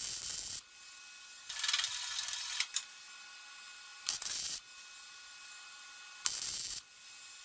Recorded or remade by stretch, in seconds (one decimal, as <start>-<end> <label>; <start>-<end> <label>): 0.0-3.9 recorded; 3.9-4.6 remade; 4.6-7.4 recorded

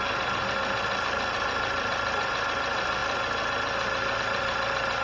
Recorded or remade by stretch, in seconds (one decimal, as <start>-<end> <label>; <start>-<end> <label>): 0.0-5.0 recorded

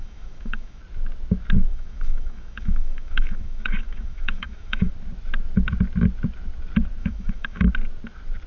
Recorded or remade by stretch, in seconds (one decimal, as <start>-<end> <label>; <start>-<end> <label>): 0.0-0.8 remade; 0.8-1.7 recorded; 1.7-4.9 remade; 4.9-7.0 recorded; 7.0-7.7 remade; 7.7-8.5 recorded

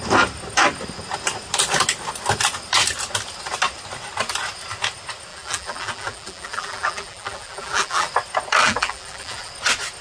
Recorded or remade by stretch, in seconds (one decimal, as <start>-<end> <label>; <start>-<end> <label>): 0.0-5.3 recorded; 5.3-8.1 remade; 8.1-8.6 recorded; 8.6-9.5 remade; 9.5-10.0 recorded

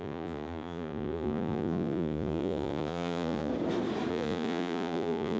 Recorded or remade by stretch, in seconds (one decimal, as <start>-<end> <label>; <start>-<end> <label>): 0.0-3.5 remade; 3.5-4.1 recorded; 4.1-5.4 remade

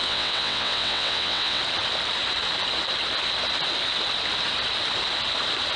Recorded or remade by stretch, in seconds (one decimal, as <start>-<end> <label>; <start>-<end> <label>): 0.0-1.6 remade; 1.6-5.8 recorded